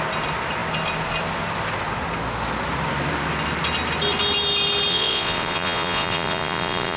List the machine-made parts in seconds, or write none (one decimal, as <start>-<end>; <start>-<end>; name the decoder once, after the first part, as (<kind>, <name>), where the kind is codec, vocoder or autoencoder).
4.9-7.0 (vocoder, Vocos)